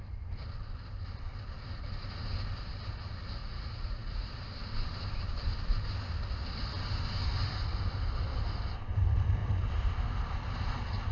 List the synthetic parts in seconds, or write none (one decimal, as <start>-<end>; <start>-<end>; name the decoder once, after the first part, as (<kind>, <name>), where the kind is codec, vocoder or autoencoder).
3.4-4.3 (vocoder, Vocos)